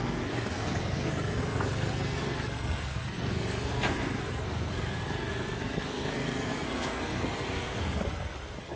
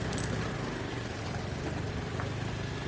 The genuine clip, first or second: second